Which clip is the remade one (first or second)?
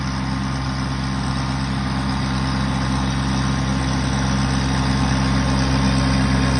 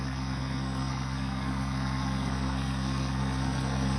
second